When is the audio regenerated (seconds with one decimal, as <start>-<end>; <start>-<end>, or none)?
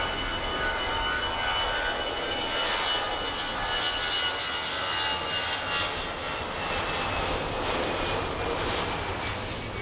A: 0.5-1.2